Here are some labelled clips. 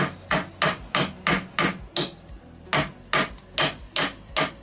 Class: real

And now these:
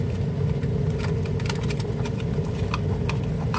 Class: real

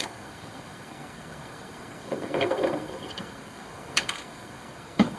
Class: fake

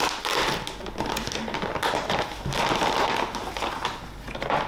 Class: real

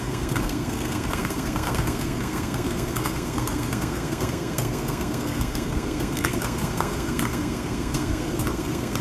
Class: fake